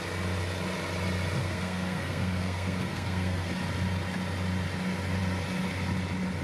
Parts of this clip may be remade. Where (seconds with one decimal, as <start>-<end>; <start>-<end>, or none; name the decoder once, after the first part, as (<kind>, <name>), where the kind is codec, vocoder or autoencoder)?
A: 1.4-3.5 (codec, SNAC)